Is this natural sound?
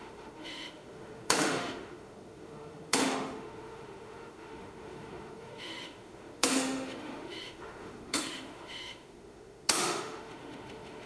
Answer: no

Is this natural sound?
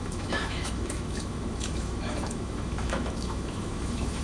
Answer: no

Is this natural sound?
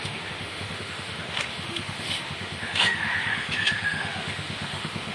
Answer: no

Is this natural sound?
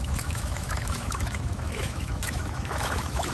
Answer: no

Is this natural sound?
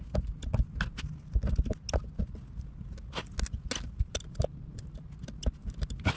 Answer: yes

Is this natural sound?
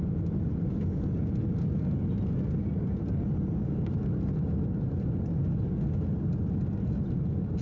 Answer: yes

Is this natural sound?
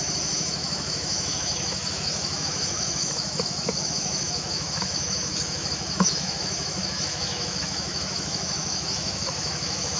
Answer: no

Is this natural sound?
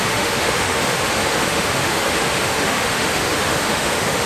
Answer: no